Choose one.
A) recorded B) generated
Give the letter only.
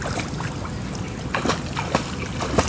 A